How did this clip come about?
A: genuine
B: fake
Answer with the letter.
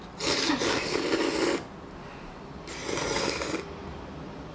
A